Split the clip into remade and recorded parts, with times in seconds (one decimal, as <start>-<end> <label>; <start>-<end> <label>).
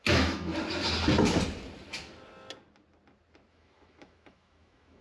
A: 0.0-0.5 remade; 0.5-3.5 recorded; 3.5-5.0 remade